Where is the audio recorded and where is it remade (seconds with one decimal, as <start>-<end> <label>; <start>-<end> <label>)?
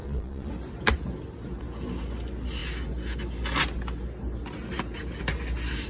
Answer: 0.0-0.5 remade; 0.5-5.9 recorded